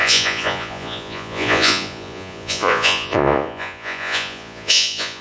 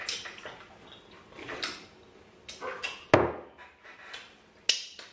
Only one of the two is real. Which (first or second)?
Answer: second